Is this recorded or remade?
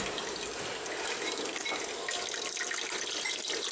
recorded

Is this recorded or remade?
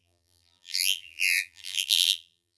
remade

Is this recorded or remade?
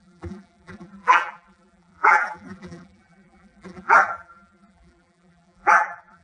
remade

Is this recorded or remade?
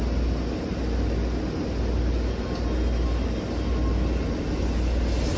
recorded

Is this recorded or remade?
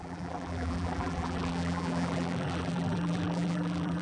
remade